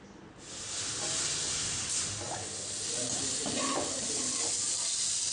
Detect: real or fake real